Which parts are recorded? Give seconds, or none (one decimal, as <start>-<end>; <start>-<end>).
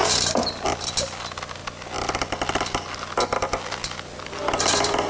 0.0-0.8; 1.6-2.2